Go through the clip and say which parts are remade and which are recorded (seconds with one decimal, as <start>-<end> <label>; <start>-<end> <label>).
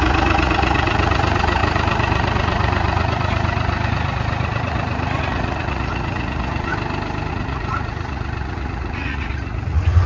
0.0-6.7 remade; 6.7-7.3 recorded; 7.3-10.1 remade